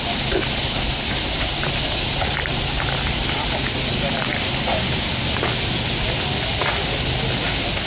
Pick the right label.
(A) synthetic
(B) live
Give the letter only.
B